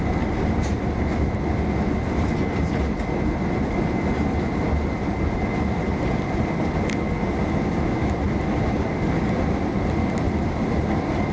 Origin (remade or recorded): recorded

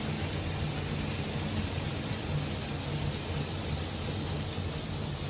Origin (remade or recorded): recorded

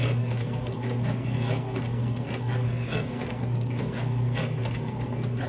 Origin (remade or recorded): remade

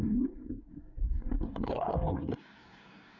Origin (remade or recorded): remade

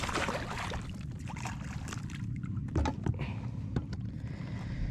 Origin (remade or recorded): recorded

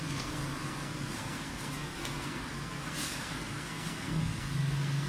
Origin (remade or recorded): remade